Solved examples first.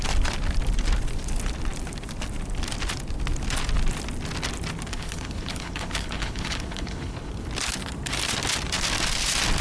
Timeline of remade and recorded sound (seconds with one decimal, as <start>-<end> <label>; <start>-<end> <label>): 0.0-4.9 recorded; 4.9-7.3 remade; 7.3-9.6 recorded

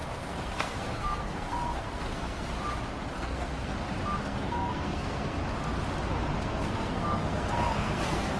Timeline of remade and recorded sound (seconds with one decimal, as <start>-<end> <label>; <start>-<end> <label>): 0.0-2.5 remade; 2.5-3.1 recorded; 3.1-3.7 remade; 3.7-4.2 recorded; 4.2-5.4 remade; 5.4-6.4 recorded; 6.4-8.4 remade

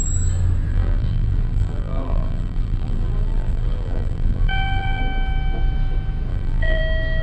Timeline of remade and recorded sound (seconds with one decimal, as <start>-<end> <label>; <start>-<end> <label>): 0.0-0.7 recorded; 0.7-5.0 remade; 5.0-6.3 recorded; 6.3-6.8 remade; 6.8-7.2 recorded

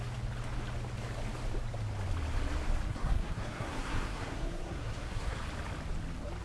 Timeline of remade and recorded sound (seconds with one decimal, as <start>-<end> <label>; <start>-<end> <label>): 0.0-2.9 recorded; 2.9-5.4 remade; 5.4-6.4 recorded

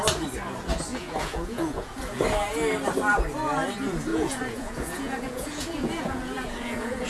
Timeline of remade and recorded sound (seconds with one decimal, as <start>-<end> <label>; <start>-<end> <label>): 0.0-0.9 recorded; 0.9-2.0 remade; 2.0-4.1 recorded; 4.1-7.1 remade

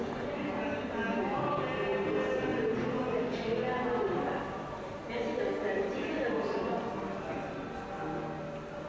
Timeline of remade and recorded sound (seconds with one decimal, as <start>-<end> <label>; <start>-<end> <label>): 0.0-8.9 recorded